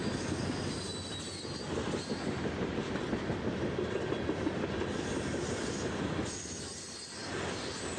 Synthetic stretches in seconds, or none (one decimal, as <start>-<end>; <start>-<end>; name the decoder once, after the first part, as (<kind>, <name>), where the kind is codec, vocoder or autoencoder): none